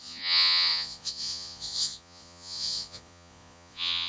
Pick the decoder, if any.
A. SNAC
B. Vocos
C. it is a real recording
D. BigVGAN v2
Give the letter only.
B